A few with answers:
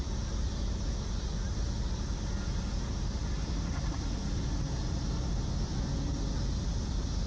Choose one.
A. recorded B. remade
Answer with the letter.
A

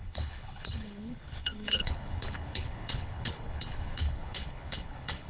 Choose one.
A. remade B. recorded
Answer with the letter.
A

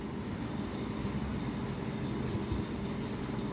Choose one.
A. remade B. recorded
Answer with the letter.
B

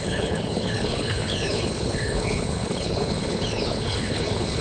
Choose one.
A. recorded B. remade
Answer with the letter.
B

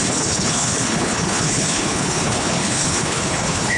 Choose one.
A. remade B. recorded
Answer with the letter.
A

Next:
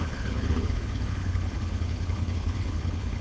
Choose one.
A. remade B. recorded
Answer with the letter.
A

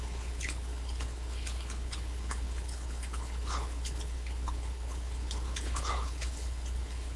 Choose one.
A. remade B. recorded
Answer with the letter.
A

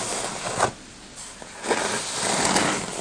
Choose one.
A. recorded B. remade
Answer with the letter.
A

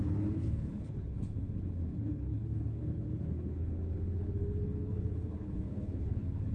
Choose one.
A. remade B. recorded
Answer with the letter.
A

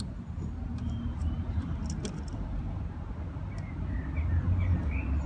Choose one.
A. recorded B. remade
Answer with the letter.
A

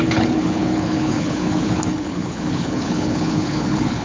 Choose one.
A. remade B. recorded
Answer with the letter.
A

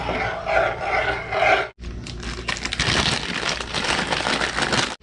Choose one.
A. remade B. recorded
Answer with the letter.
B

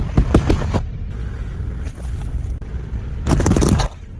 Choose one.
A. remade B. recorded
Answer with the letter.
B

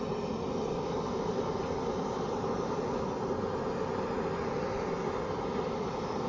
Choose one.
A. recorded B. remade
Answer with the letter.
A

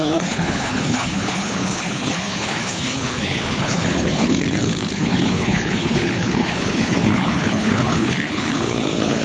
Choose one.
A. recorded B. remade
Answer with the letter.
B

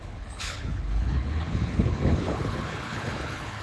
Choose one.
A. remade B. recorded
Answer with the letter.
A